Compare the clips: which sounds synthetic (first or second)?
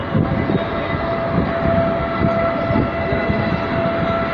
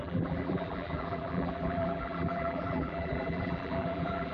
second